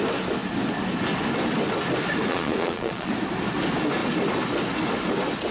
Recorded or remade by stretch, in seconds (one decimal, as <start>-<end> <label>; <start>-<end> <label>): 0.0-2.3 recorded; 2.3-3.1 remade; 3.1-5.5 recorded